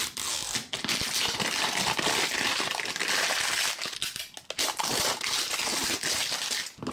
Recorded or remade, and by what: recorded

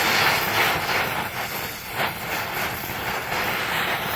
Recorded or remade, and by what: recorded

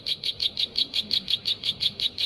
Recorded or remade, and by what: remade, autoencoder, DAC-VAE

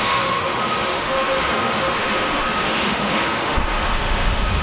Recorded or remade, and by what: remade, autoencoder, DAC-VAE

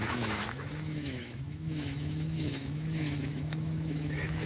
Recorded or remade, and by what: remade, autoencoder, DAC-VAE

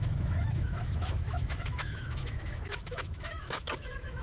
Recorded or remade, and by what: remade, autoencoder, DAC-VAE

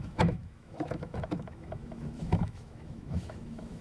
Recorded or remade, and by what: remade, autoencoder, DAC-VAE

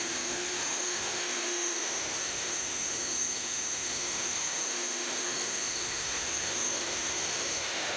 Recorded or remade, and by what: remade, autoencoder, DAC-VAE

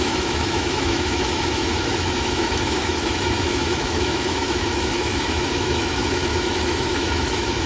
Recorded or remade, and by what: remade, autoencoder, DAC-VAE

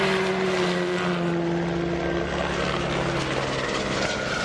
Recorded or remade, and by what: recorded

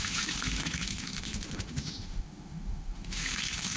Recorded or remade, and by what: remade, autoencoder, DAC-VAE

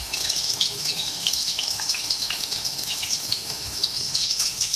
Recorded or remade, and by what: remade, autoencoder, DAC-VAE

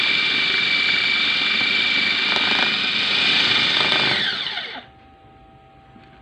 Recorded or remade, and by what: recorded